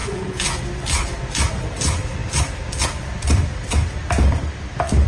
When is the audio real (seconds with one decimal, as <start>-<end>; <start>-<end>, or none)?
0.6-5.1